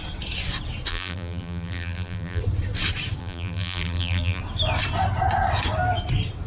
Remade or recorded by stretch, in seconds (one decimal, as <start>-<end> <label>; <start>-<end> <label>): 0.0-0.9 recorded; 0.9-2.4 remade; 2.4-3.2 recorded; 3.2-4.4 remade; 4.4-6.5 recorded